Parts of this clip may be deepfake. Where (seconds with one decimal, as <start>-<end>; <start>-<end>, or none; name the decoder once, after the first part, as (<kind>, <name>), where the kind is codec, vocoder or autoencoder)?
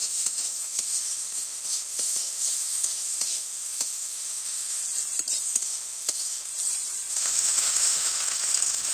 0.0-4.8 (autoencoder, DAC-VAE); 5.4-6.5; 7.1-8.9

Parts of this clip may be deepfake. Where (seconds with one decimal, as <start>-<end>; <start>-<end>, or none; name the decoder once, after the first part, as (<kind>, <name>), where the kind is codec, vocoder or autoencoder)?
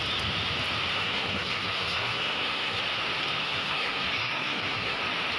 0.9-2.8 (codec, SNAC); 3.4-5.0